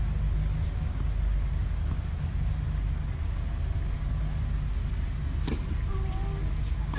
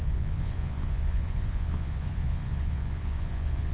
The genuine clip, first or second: first